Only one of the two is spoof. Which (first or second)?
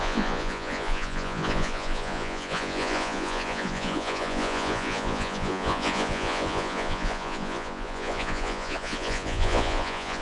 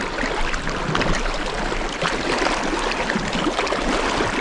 first